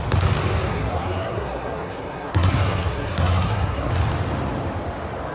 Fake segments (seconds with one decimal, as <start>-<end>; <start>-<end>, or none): 0.7-3.9